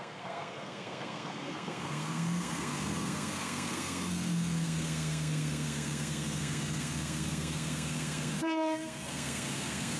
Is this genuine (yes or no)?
no